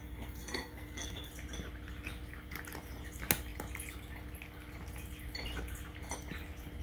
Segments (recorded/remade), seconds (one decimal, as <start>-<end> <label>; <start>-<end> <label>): 0.0-1.3 remade; 1.3-6.8 recorded